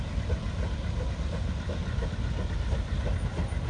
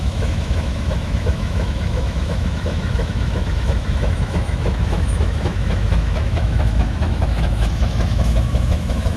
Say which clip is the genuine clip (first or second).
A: first